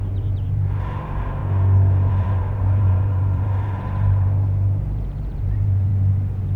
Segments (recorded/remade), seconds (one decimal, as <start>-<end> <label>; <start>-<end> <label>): 0.0-1.4 remade; 1.4-2.1 recorded; 2.1-5.9 remade; 5.9-6.6 recorded

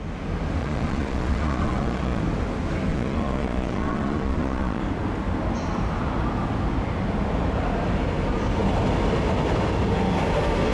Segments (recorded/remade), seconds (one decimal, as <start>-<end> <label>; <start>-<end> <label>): 0.0-0.6 recorded; 0.6-2.2 remade; 2.2-2.9 recorded; 2.9-4.8 remade; 4.8-10.7 recorded

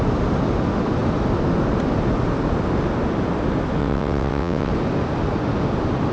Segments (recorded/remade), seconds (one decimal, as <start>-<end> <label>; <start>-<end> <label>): 0.0-3.8 recorded; 3.8-4.7 remade; 4.7-6.1 recorded

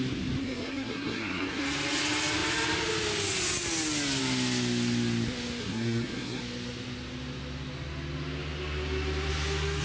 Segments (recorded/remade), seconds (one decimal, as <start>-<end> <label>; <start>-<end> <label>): 0.0-0.4 recorded; 0.4-1.6 remade; 1.6-5.6 recorded; 5.6-6.4 remade; 6.4-9.8 recorded

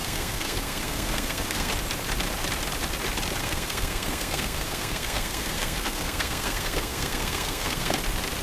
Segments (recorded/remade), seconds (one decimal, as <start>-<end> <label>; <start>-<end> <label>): 0.0-1.7 remade; 1.7-3.4 recorded; 3.4-8.0 remade; 8.0-8.4 recorded

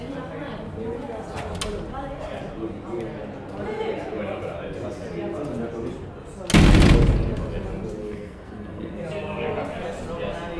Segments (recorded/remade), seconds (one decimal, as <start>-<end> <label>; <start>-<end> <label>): 0.0-8.0 recorded; 8.0-9.0 remade; 9.0-10.6 recorded

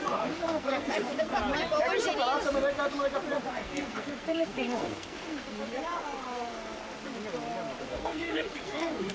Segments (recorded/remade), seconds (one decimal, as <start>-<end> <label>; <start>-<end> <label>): 0.0-1.3 remade; 1.3-3.5 recorded; 3.5-6.8 remade; 6.8-7.8 recorded; 7.8-9.1 remade

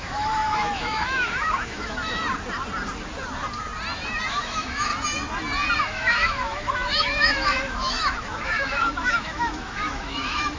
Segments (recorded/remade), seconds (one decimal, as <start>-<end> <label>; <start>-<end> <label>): 0.0-2.2 remade; 2.2-4.3 recorded; 4.3-4.9 remade; 4.9-5.8 recorded; 5.8-10.6 remade